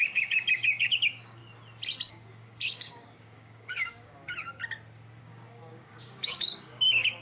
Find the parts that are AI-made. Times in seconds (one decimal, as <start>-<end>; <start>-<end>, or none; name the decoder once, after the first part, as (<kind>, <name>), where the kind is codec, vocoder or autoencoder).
0.0-1.4 (codec, DAC); 2.1-4.6; 5.2-7.2